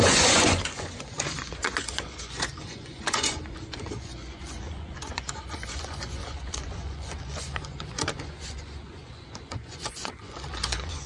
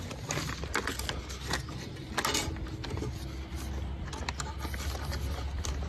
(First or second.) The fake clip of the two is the first